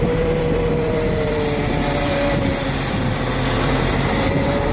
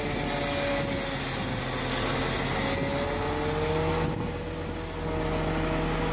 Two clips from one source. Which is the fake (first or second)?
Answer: first